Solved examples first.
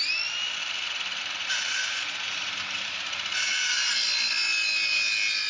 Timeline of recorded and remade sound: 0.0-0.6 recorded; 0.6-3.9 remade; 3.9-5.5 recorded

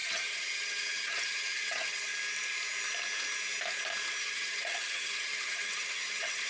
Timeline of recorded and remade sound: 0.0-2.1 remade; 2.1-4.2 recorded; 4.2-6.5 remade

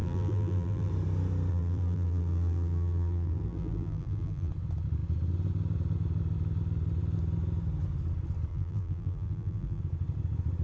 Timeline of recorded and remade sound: 0.0-0.9 remade; 0.9-1.5 recorded; 1.5-4.5 remade; 4.5-8.5 recorded; 8.5-9.8 remade; 9.8-10.6 recorded